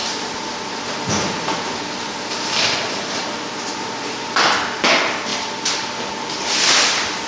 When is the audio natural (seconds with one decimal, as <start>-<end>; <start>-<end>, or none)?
4.4-5.3; 6.0-7.3